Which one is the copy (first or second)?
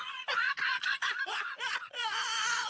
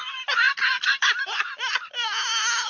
first